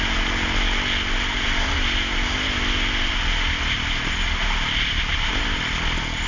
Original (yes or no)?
yes